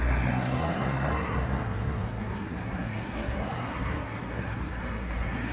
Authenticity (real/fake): fake